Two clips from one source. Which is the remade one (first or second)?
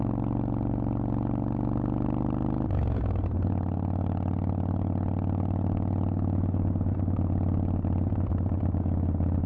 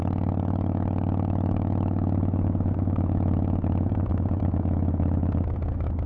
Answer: second